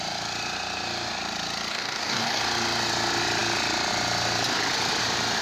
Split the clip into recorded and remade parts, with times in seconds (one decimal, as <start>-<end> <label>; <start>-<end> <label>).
0.0-1.7 recorded; 1.7-2.4 remade; 2.4-5.4 recorded